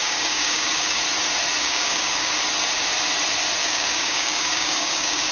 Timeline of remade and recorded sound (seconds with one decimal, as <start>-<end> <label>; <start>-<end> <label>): 0.0-1.0 remade; 1.0-1.6 recorded; 1.6-2.3 remade; 2.3-3.6 recorded; 3.6-5.3 remade